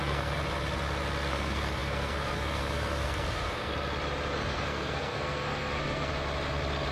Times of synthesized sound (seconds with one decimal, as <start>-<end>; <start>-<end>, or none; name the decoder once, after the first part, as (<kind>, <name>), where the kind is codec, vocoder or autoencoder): 0.0-0.4 (codec, SNAC); 1.3-3.7; 4.3-6.1